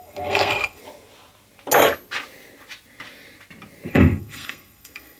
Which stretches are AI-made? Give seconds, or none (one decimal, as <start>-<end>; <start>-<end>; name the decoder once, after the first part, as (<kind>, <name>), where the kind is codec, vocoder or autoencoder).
0.0-0.8 (codec, SNAC); 3.9-5.2